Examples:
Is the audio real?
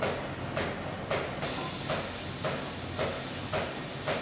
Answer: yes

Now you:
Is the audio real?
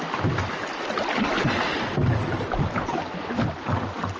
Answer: yes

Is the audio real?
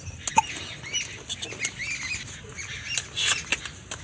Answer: yes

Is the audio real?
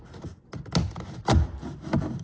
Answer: yes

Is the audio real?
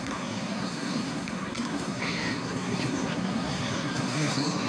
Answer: no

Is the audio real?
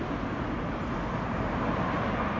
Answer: yes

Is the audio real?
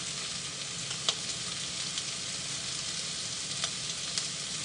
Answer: yes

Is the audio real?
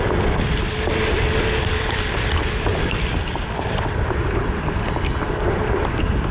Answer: yes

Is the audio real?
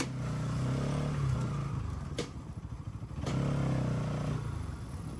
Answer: yes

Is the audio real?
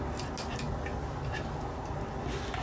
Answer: yes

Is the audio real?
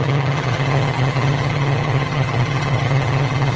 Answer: no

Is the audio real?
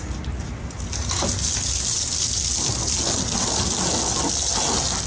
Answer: yes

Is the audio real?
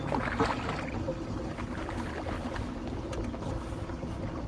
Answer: yes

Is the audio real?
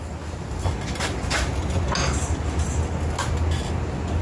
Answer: yes